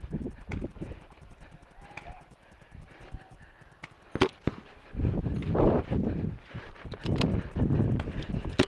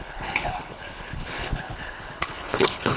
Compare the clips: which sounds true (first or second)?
first